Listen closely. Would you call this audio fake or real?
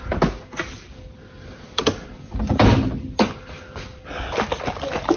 real